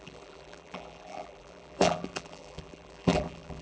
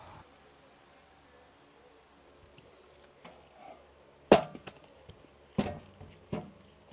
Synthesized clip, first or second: first